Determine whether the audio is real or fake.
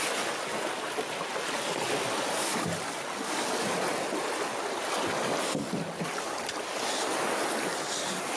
real